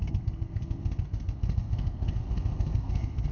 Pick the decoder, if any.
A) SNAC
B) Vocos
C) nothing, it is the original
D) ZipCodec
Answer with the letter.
A